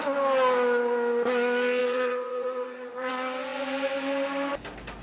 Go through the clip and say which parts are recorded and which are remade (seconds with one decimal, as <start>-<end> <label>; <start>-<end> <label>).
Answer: 0.0-1.8 recorded; 1.8-3.1 remade; 3.1-5.0 recorded